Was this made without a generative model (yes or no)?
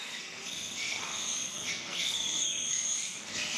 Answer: no